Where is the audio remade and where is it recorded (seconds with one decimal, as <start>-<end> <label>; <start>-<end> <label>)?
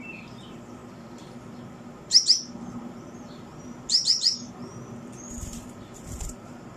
0.0-0.8 remade; 0.8-1.7 recorded; 1.7-4.7 remade; 4.7-5.9 recorded; 5.9-6.8 remade